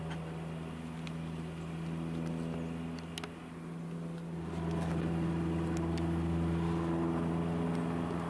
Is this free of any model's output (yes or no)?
yes